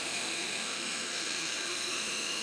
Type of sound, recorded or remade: remade